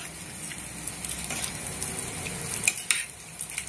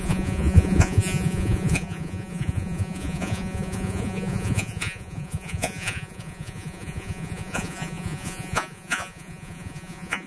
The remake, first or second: second